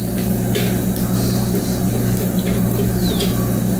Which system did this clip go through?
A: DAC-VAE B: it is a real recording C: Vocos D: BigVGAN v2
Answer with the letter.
B